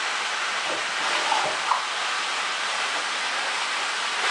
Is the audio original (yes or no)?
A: yes